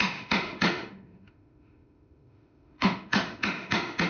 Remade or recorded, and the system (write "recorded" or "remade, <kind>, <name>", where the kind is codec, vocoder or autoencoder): remade, autoencoder, DAC-VAE